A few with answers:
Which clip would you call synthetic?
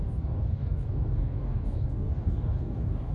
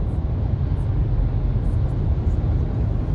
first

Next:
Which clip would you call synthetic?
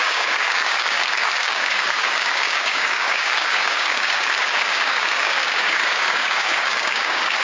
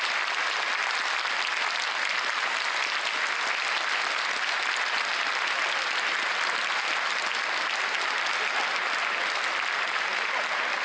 first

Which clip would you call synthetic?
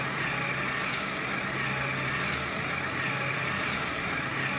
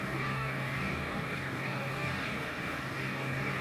second